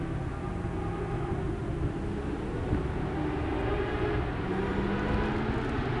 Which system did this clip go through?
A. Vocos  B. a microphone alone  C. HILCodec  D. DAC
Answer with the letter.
B